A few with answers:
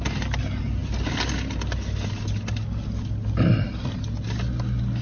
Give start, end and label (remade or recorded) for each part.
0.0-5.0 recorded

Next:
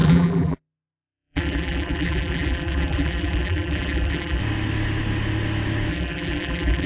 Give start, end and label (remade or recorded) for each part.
0.0-4.4 remade; 4.4-5.9 recorded; 5.9-6.9 remade

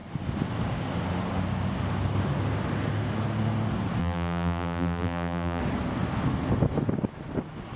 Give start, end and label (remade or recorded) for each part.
0.0-4.0 recorded; 4.0-5.6 remade; 5.6-7.8 recorded

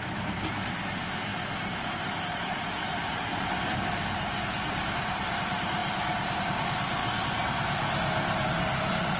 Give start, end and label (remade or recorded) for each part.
0.0-5.8 remade; 5.8-6.4 recorded; 6.4-7.0 remade; 7.0-8.5 recorded; 8.5-9.2 remade